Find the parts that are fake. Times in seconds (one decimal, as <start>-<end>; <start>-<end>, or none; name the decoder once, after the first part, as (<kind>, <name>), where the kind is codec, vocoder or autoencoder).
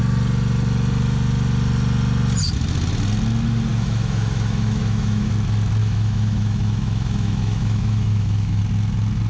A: 3.7-5.3 (autoencoder, DAC-VAE); 5.8-8.6